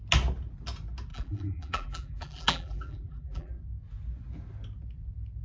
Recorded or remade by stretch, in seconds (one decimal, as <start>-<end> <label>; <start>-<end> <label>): 0.0-1.1 recorded; 1.1-3.5 remade; 3.5-5.4 recorded